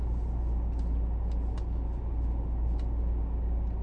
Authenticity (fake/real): real